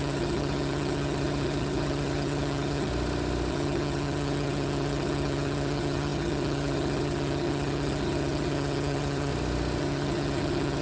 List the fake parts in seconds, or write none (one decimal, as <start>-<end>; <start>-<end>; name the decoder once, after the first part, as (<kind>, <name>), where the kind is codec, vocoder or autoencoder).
0.0-2.9 (vocoder, HiFi-GAN); 3.5-9.3; 9.8-10.8